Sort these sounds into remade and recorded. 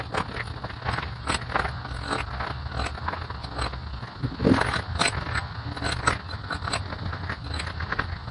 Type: recorded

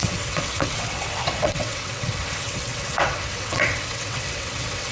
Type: remade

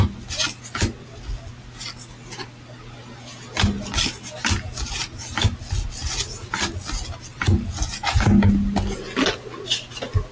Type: recorded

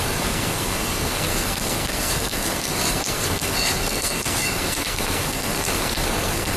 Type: remade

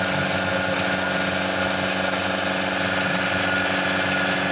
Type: recorded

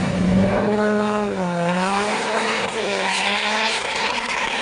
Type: remade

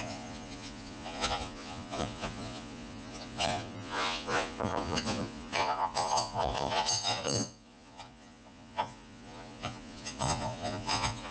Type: remade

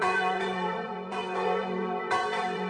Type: remade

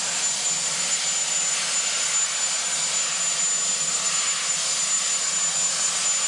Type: recorded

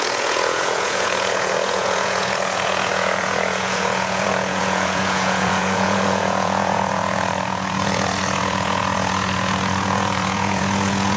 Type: remade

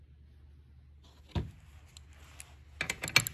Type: recorded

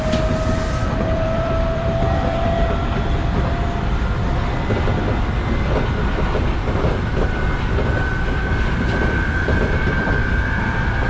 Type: remade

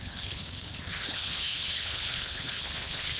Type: remade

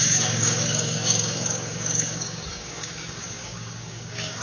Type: remade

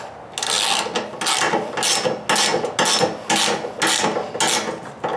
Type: recorded